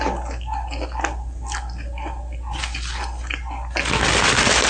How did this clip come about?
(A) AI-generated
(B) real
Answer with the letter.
B